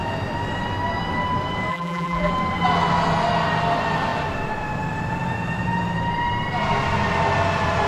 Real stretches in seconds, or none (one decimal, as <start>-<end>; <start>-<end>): 0.0-1.7; 2.3-7.9